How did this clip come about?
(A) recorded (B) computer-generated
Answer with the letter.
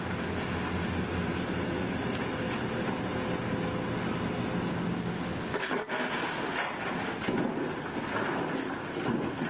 A